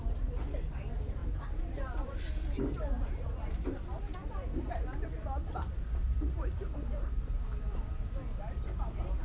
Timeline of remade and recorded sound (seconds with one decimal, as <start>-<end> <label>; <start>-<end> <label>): 0.0-1.2 recorded; 1.2-2.2 remade; 2.2-4.2 recorded; 4.2-6.6 remade; 6.6-9.2 recorded

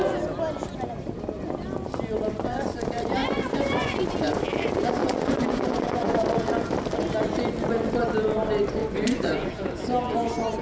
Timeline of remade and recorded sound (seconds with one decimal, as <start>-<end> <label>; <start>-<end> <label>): 0.0-3.2 recorded; 3.2-4.4 remade; 4.4-5.0 recorded; 5.0-6.2 remade; 6.2-8.8 recorded; 8.8-9.5 remade; 9.5-10.6 recorded

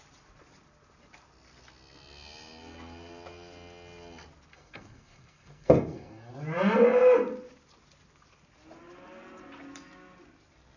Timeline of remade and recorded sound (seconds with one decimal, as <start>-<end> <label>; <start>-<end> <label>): 0.0-4.5 recorded; 4.5-6.3 remade; 6.3-10.8 recorded

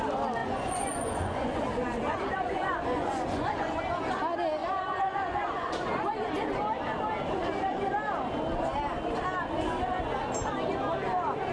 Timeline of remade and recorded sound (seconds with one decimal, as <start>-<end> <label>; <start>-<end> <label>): 0.0-0.4 recorded; 0.4-1.6 remade; 1.6-2.5 recorded; 2.5-3.8 remade; 3.8-4.6 recorded; 4.6-5.7 remade; 5.7-11.5 recorded

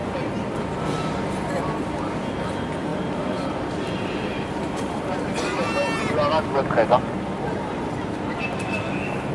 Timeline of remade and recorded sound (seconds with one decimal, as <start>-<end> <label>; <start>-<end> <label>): 0.0-2.9 recorded; 2.9-5.7 remade; 5.7-9.3 recorded

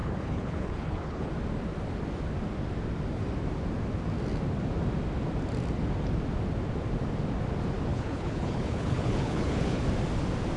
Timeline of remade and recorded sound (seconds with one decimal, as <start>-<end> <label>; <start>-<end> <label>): 0.0-1.3 remade; 1.3-7.9 recorded; 7.9-9.8 remade; 9.8-10.6 recorded